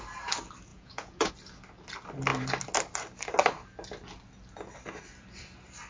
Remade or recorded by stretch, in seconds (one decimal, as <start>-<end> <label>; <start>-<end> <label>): 0.0-0.7 recorded; 0.7-1.3 remade; 1.3-5.9 recorded